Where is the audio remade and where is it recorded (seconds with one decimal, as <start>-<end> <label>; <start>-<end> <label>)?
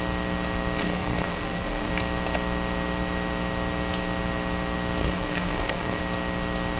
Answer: 0.0-0.8 recorded; 0.8-1.9 remade; 1.9-5.0 recorded; 5.0-6.0 remade; 6.0-6.8 recorded